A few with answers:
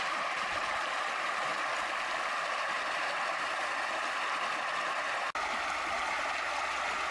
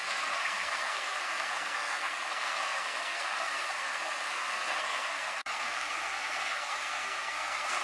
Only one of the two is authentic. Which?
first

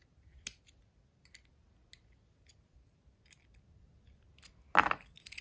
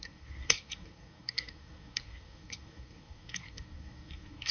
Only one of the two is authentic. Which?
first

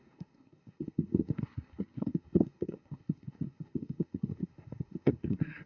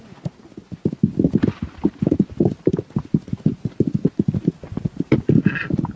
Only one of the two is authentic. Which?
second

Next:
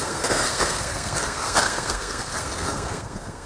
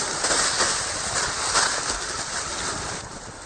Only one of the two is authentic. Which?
second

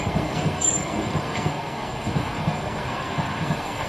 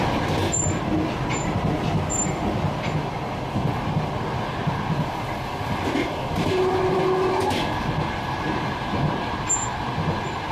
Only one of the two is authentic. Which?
second